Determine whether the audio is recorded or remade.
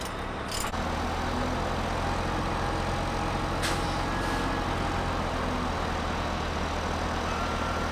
recorded